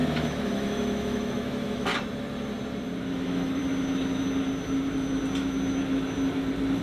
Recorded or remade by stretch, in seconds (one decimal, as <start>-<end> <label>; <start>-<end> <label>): 0.0-1.9 remade; 1.9-3.0 recorded; 3.0-3.6 remade; 3.6-6.8 recorded